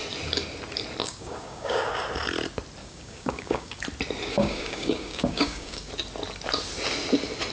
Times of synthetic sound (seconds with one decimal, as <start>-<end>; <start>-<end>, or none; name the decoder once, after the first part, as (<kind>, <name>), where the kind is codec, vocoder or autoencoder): 1.0-1.9 (codec, DAC); 2.8-3.8; 4.3-5.9